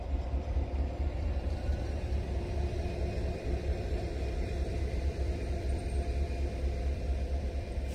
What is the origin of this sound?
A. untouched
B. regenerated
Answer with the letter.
B